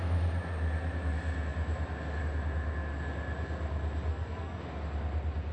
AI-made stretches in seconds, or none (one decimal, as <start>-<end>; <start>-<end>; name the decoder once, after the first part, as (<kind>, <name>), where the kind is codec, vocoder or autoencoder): 4.1-4.6 (codec, SNAC)